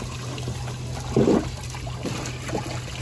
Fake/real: real